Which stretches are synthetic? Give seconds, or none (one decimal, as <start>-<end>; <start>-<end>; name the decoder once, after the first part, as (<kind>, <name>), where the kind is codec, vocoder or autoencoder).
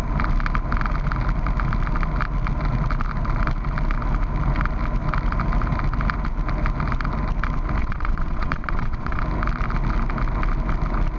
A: 7.8-9.2 (vocoder, WaveNeXt)